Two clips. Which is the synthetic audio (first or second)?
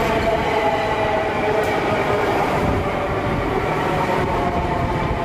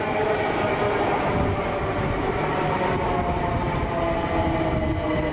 first